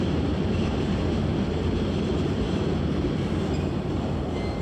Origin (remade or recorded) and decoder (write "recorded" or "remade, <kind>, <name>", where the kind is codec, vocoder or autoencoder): remade, vocoder, BigVGAN v2